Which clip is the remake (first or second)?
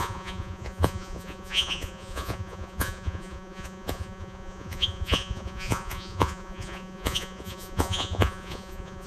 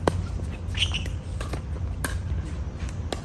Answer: first